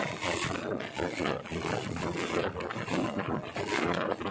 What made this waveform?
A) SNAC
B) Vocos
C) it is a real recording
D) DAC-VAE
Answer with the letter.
B